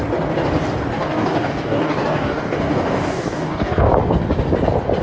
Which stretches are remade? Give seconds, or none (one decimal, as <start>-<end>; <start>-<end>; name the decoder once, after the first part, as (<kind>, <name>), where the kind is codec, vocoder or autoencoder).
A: 0.9-3.9 (codec, DAC)